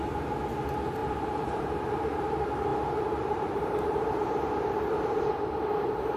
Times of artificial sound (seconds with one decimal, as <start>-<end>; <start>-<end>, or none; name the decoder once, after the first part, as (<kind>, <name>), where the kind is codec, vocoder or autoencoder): 1.0-1.9 (vocoder, BigVGAN v2); 2.7-5.2